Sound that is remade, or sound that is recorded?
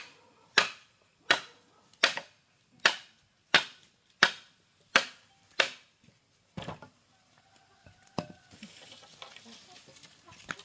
recorded